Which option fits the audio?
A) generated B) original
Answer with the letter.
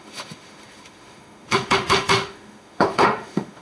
A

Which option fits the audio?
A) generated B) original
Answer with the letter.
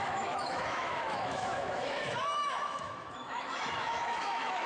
A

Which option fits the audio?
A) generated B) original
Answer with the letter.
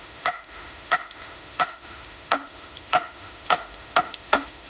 A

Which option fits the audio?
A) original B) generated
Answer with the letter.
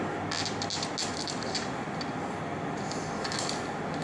A